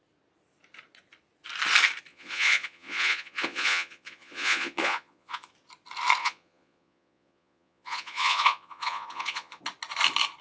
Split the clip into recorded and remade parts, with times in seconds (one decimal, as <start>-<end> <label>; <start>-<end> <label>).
0.0-2.1 recorded; 2.1-5.5 remade; 5.5-6.2 recorded; 6.2-9.6 remade; 9.6-10.4 recorded